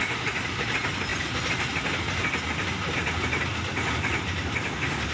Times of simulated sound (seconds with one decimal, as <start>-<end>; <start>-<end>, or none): none